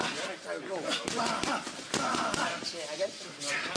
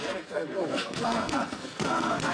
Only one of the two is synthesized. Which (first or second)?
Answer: second